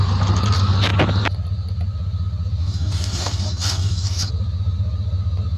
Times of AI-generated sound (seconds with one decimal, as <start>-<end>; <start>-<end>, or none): 2.6-4.3